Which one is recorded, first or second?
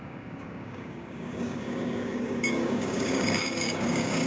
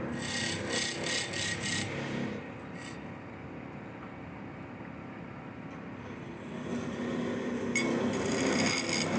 second